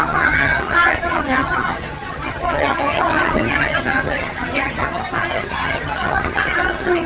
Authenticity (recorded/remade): remade